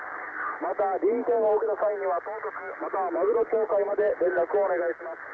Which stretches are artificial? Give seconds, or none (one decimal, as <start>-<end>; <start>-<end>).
none